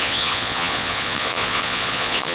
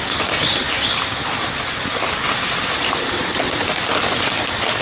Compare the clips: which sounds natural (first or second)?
second